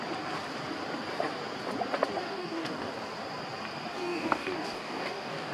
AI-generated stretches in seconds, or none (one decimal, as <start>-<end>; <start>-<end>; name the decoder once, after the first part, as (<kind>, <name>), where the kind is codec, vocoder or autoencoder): 2.2-2.9 (codec, DAC); 4.0-5.5